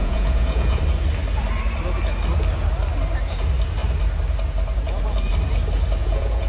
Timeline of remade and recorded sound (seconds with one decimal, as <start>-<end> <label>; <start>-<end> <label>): 0.0-0.8 remade; 0.8-6.0 recorded; 6.0-6.5 remade